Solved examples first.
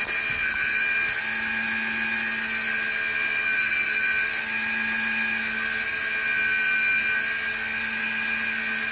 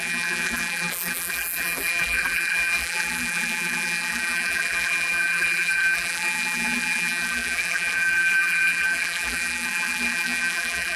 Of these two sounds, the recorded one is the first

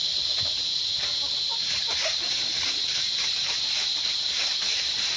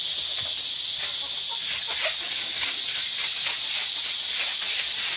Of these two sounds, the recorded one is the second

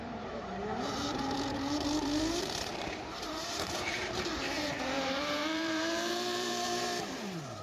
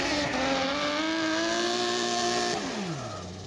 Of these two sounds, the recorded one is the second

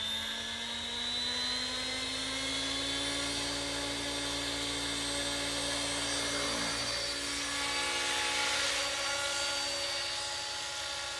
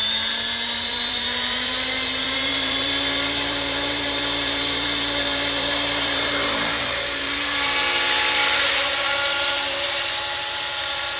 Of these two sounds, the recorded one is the first